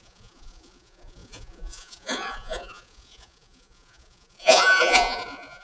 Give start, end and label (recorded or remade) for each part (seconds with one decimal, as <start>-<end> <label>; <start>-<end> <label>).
0.0-5.6 remade